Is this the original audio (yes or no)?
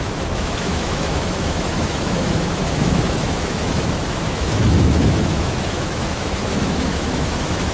no